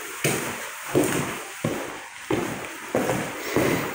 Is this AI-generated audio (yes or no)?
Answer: no